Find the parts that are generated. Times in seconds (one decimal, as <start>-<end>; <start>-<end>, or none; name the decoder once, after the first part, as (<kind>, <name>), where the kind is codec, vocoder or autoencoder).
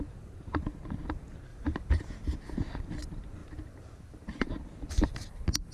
1.5-2.4 (vocoder, BigVGAN v2); 3.4-4.5